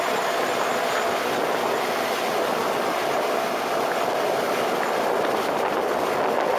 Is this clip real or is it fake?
real